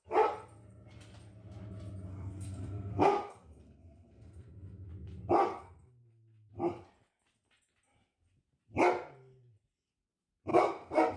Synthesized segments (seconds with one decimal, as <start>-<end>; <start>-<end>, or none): 2.1-4.9; 5.5-6.5; 10.5-11.2